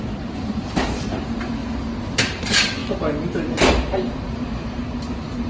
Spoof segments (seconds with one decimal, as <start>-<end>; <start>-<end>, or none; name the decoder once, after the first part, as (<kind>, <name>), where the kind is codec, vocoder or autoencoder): 0.0-1.6 (vocoder, BigVGAN v2); 2.2-2.8; 3.7-5.5